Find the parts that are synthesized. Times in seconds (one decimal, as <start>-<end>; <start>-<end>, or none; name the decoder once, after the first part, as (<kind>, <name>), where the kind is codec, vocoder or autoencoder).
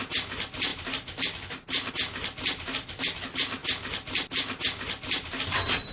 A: none